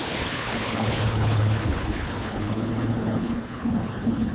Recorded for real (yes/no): no